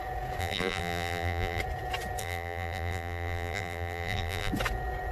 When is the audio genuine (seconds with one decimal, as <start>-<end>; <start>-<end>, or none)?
0.0-0.4; 1.6-2.2; 4.5-5.1